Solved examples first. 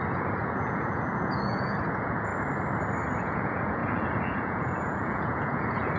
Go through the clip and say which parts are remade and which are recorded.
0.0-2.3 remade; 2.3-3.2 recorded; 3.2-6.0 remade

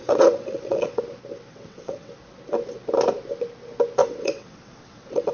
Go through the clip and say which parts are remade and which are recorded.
0.0-1.0 remade; 1.0-1.5 recorded; 1.5-2.1 remade; 2.1-4.0 recorded; 4.0-5.3 remade

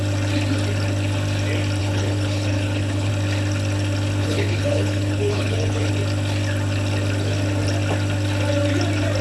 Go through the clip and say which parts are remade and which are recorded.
0.0-1.8 recorded; 1.8-3.1 remade; 3.1-4.2 recorded; 4.2-5.9 remade; 5.9-9.2 recorded